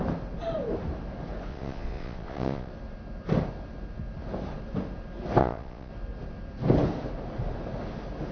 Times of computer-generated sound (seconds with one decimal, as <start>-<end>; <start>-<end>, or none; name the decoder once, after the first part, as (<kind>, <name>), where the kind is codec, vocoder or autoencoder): 1.5-2.7 (vocoder, Vocos); 5.4-5.9